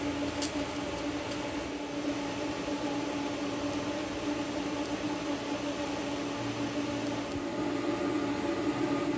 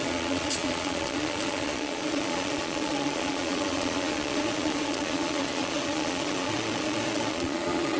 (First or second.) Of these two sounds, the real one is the first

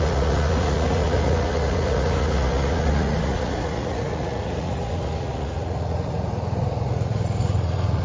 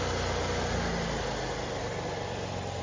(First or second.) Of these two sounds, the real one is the second